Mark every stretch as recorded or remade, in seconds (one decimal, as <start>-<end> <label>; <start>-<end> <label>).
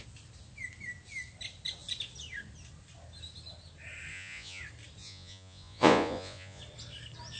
0.0-4.1 recorded; 4.1-4.6 remade; 4.6-5.0 recorded; 5.0-6.6 remade; 6.6-7.4 recorded